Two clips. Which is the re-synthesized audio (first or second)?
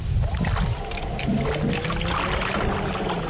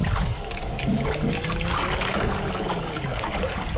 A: second